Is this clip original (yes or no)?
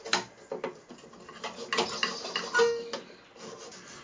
yes